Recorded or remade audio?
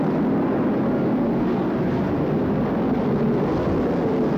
recorded